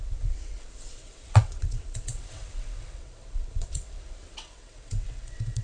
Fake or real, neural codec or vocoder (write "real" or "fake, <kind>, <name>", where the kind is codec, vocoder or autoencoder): fake, vocoder, WaveNeXt